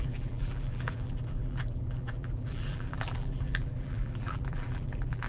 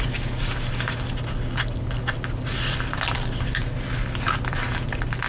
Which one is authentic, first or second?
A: second